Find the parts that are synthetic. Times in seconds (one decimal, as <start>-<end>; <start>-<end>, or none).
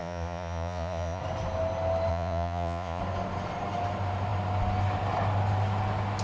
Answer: 0.0-1.2; 2.1-3.0